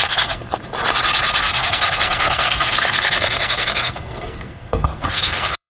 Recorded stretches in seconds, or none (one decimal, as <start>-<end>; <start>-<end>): 0.6-1.4